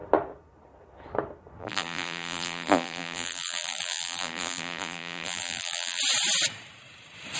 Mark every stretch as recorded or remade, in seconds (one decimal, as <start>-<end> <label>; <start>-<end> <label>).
0.0-1.6 recorded; 1.6-6.0 remade; 6.0-7.4 recorded